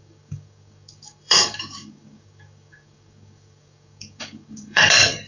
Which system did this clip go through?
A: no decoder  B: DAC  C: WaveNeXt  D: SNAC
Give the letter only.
B